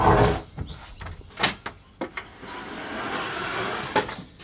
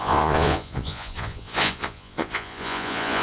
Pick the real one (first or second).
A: first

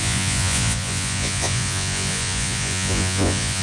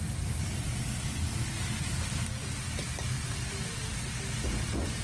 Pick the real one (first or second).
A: second